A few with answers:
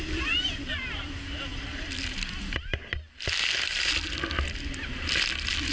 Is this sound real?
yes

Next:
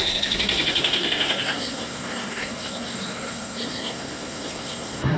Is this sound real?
no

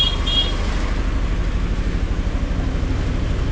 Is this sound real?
yes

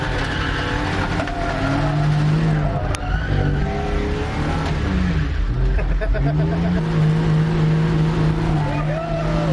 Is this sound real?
yes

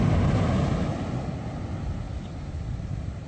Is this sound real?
yes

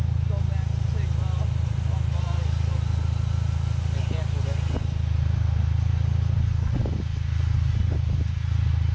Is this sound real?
yes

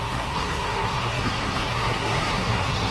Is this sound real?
no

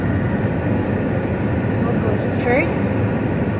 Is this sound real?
yes